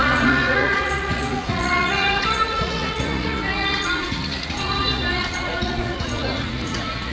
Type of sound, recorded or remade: remade